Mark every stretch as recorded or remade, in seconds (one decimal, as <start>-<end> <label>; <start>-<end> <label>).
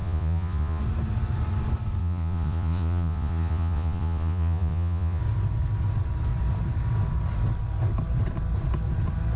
0.0-0.8 remade; 0.8-2.0 recorded; 2.0-5.2 remade; 5.2-9.4 recorded